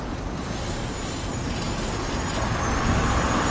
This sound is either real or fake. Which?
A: real